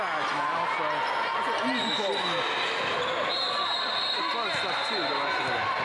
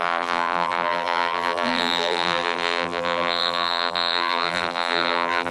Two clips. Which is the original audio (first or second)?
first